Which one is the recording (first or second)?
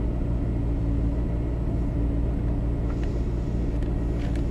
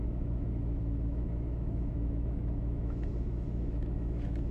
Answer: first